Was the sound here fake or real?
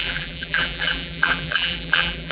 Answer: fake